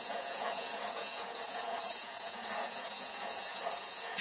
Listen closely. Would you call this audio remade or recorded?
remade